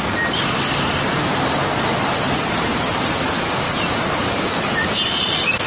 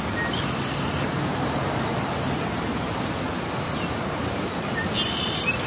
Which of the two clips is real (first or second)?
second